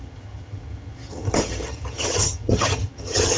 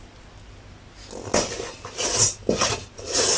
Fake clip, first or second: first